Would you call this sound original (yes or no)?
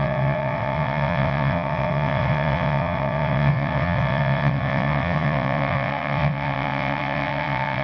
no